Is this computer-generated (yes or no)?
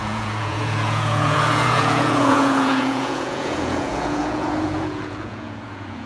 yes